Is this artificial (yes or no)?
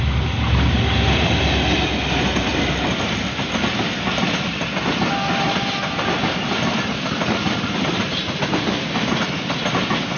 no